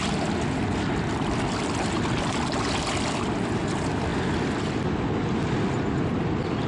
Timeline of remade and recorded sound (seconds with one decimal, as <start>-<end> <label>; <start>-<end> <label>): 0.0-4.1 recorded; 4.1-4.7 remade; 4.7-6.7 recorded

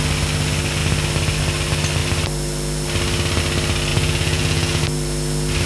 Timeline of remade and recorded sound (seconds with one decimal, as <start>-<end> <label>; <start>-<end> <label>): 0.0-3.9 recorded; 3.9-4.8 remade; 4.8-5.7 recorded

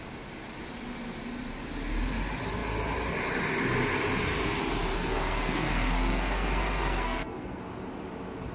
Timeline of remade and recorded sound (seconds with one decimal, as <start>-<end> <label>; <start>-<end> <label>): 0.0-5.0 recorded; 5.0-7.6 remade; 7.6-8.5 recorded

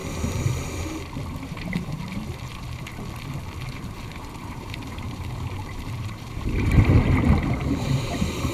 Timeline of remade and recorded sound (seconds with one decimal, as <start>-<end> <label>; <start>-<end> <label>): 0.0-1.3 recorded; 1.3-2.9 remade; 2.9-3.7 recorded; 3.7-8.5 remade

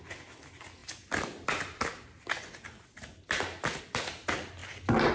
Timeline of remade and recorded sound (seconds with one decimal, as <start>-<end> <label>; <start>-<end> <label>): 0.0-5.1 recorded

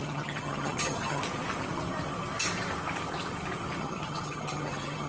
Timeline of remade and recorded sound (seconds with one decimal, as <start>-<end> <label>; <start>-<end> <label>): 0.0-1.2 remade; 1.2-3.8 recorded; 3.8-5.1 remade